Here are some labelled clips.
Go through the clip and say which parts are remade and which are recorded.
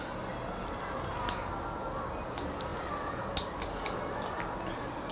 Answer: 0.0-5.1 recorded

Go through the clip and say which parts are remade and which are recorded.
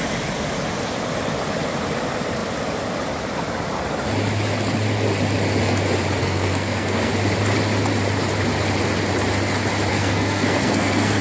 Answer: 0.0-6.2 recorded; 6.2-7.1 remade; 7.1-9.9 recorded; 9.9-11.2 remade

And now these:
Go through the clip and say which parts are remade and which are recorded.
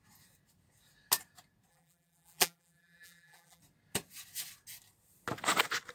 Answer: 0.0-1.7 recorded; 1.7-3.6 remade; 3.6-5.9 recorded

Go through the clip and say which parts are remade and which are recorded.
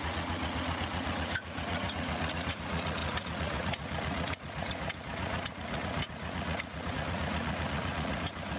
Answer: 0.0-8.6 remade